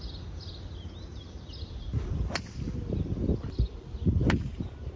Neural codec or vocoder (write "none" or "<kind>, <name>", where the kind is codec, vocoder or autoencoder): none